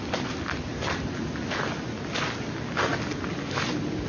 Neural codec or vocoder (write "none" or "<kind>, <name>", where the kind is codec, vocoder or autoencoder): none